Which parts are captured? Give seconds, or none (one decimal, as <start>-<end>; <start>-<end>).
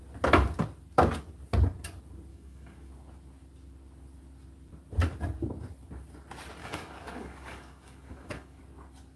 0.0-2.3; 2.9-6.6; 8.6-9.2